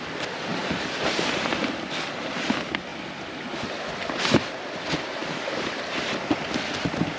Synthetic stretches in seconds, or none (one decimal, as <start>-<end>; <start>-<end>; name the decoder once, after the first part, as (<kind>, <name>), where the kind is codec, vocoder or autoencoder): none